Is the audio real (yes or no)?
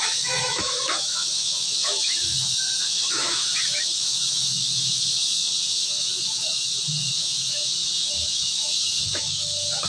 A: no